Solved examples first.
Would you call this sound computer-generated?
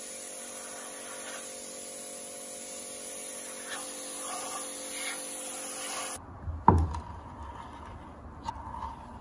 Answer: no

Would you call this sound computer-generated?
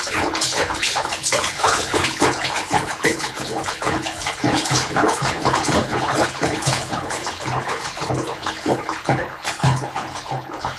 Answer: yes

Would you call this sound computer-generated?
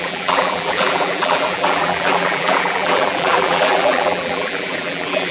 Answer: yes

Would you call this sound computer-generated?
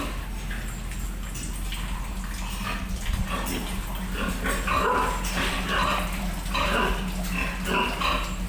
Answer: no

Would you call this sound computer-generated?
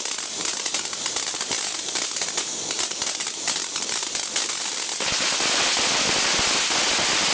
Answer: no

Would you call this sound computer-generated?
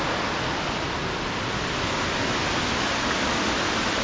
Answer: no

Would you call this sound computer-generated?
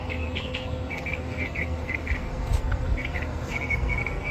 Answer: yes